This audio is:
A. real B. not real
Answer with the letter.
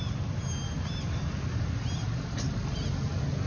A